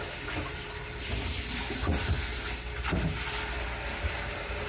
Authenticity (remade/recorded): recorded